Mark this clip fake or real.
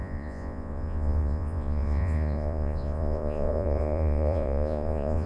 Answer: fake